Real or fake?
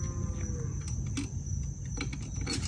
real